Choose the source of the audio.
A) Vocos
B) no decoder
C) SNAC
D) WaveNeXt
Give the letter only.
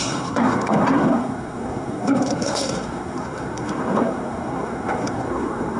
C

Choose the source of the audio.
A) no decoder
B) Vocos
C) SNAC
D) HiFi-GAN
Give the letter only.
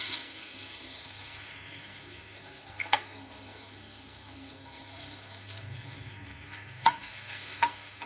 C